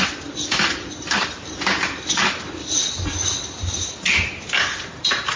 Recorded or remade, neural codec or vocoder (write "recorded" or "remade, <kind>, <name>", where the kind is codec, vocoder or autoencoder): recorded